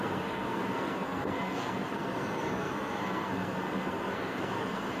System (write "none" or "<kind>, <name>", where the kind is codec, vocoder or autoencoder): codec, SNAC